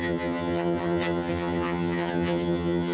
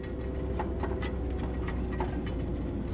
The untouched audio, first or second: second